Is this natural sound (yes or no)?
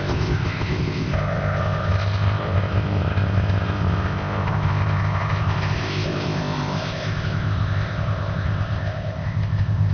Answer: no